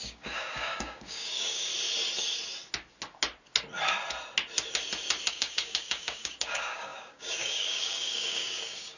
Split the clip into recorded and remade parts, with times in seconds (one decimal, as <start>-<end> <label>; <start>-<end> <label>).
0.0-1.7 remade; 1.7-5.3 recorded; 5.3-9.0 remade